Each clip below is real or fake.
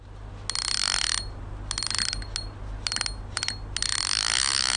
real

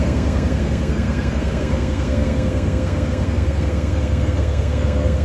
fake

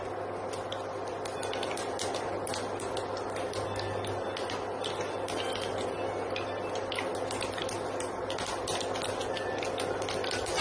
real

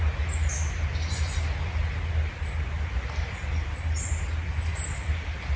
real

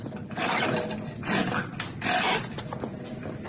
real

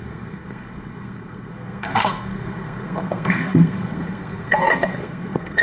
fake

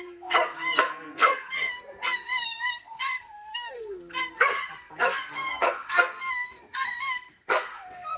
fake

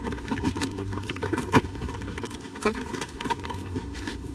fake